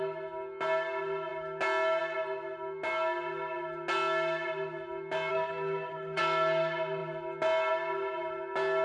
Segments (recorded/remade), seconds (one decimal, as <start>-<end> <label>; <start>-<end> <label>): 0.0-5.3 recorded; 5.3-6.2 remade; 6.2-8.8 recorded